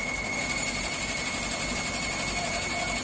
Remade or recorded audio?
recorded